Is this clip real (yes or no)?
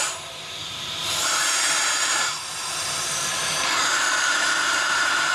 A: no